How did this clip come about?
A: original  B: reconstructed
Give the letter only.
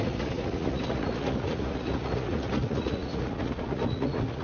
B